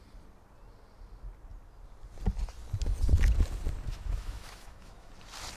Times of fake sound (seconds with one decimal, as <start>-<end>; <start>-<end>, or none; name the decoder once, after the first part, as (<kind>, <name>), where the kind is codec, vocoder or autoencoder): 3.9-5.1 (autoencoder, DAC-VAE)